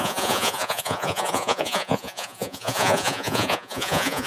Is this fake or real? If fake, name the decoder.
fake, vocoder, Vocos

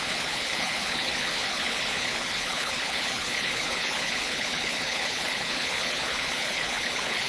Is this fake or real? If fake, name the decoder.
fake, codec, HILCodec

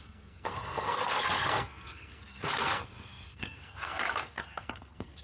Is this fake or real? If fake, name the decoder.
fake, codec, SNAC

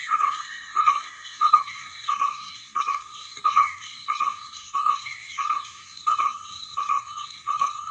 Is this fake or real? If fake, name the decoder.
fake, codec, SNAC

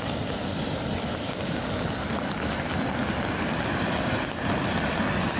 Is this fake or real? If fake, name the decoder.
real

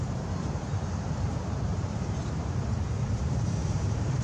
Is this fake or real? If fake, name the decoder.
fake, vocoder, BigVGAN v2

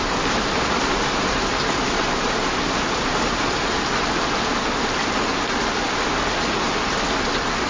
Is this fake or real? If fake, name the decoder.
real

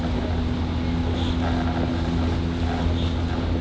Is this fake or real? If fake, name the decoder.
real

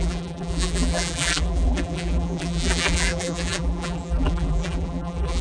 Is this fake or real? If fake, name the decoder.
fake, vocoder, BigVGAN v2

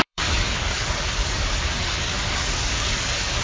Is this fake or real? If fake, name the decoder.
fake, codec, DAC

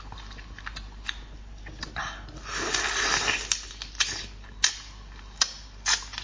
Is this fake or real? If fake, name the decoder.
real